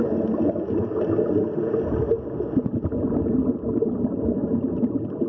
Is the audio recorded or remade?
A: recorded